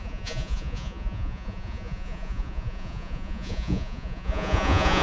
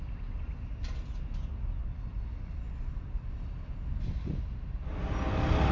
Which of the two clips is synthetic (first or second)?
first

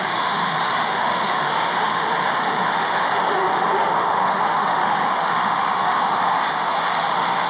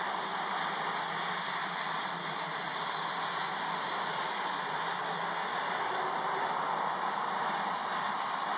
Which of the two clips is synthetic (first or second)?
first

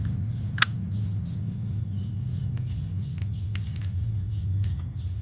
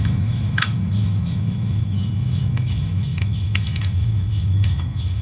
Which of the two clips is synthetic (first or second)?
second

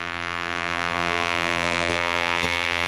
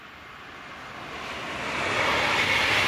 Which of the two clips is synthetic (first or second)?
first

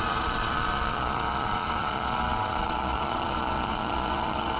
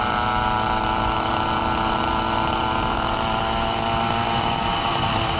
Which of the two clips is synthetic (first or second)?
first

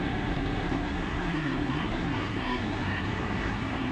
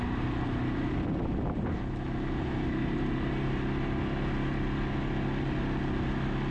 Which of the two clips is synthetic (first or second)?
first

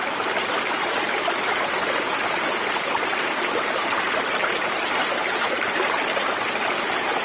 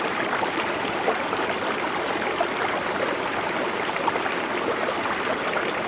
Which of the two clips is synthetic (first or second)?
first